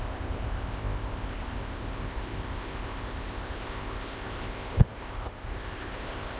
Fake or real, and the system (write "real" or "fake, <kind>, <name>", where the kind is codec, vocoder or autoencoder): fake, codec, ZipCodec